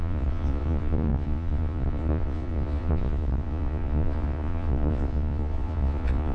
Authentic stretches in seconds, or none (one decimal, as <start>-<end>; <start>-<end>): none

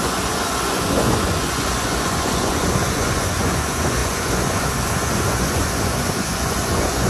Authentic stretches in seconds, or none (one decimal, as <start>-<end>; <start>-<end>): none